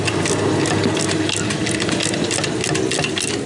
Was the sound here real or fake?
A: real